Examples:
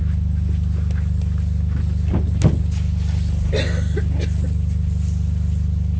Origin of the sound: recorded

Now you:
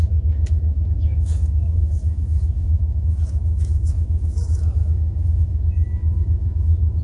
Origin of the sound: remade